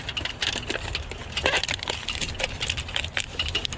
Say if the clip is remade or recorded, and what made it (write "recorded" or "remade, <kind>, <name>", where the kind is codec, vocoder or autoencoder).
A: recorded